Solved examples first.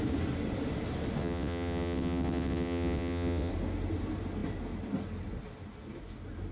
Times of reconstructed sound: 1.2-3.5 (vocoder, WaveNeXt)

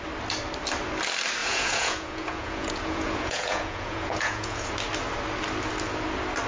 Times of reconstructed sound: 1.4-4.7 (vocoder, Vocos)

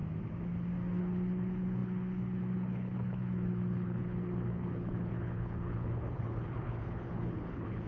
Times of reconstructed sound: 1.0-7.9 (codec, HILCodec)

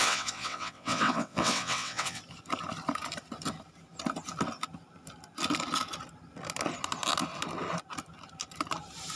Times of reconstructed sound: 0.0-2.2 (vocoder, WaveNeXt)

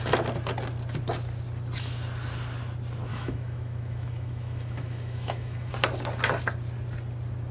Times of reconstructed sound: 3.1-5.7 (autoencoder, DAC-VAE)

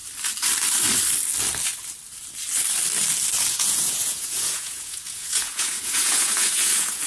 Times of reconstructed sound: 3.4-7.1 (vocoder, Vocos)

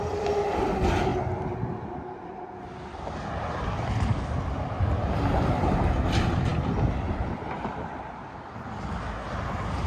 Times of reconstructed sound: none